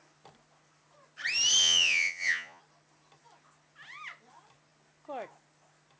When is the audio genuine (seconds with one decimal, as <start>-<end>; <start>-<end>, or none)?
0.0-1.6; 2.6-6.0